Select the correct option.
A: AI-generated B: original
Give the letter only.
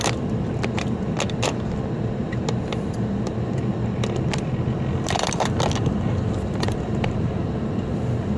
A